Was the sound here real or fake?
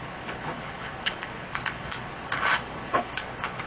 fake